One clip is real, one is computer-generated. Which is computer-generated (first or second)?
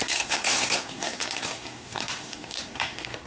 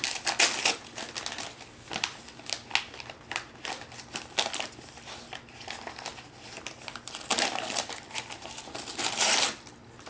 first